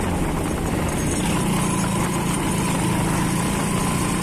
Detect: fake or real real